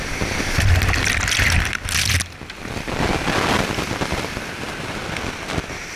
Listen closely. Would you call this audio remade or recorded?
recorded